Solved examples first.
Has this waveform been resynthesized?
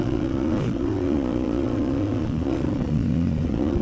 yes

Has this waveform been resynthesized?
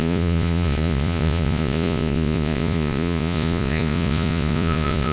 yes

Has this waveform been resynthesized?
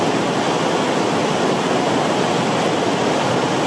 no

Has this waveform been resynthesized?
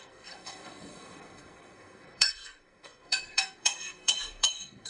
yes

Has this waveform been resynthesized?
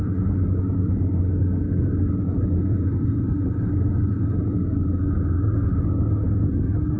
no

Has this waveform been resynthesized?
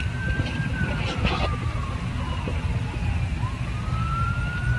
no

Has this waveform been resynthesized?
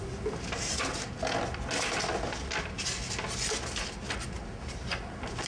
no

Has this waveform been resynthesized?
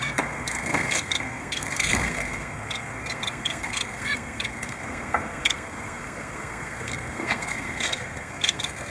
yes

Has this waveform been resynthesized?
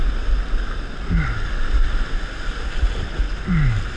no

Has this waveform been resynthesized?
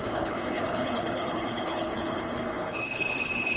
yes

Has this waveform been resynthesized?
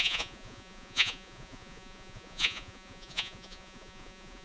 yes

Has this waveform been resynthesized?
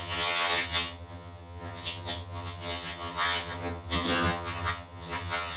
yes